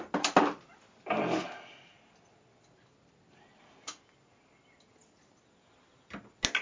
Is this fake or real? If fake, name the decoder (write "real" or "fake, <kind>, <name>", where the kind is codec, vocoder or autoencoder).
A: real